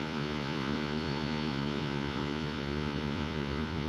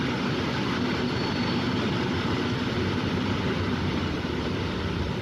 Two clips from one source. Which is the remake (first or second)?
first